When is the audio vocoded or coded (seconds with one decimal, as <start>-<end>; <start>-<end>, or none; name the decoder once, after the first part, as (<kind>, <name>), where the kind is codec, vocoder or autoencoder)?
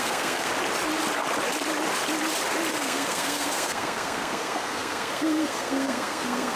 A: 0.0-0.5 (codec, SNAC); 2.7-6.6